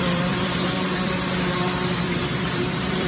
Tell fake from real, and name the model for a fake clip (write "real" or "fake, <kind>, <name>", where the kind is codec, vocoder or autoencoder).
fake, vocoder, BigVGAN v2